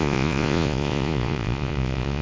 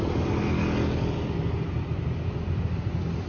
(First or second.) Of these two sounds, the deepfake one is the first